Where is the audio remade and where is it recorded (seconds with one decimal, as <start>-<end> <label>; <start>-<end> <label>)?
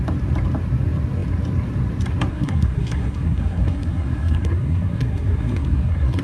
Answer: 0.0-2.3 recorded; 2.3-6.2 remade